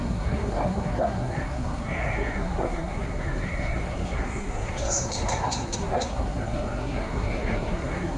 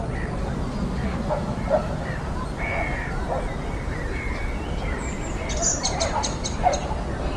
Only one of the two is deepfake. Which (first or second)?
first